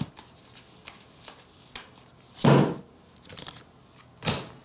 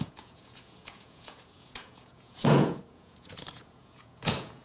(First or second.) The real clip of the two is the first